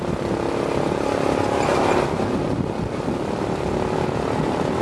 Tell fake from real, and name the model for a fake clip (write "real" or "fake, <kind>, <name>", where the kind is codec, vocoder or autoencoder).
real